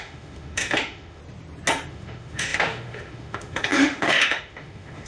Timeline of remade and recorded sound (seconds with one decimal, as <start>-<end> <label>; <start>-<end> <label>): 0.0-1.2 remade; 1.2-1.9 recorded; 1.9-5.1 remade